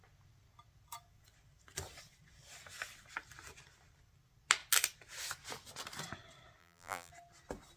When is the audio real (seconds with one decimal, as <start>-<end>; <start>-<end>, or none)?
0.0-6.6; 7.1-7.8